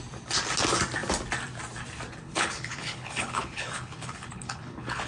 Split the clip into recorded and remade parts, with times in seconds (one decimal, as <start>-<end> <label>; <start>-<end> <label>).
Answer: 0.0-2.2 recorded; 2.2-5.1 remade